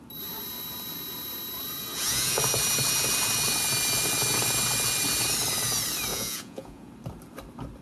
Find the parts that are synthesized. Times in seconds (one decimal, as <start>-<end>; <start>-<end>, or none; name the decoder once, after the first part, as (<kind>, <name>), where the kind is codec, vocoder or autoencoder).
1.8-2.4 (vocoder, Vocos); 6.1-6.9